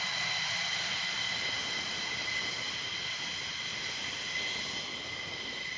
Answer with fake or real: real